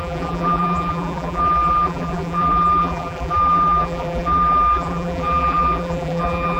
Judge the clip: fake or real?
fake